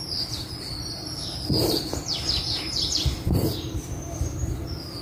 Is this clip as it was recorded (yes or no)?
no